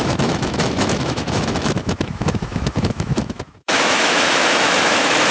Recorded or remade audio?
remade